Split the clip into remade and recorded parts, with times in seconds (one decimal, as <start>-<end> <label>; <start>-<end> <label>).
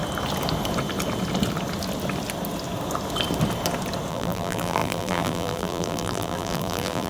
0.0-4.1 recorded; 4.1-7.1 remade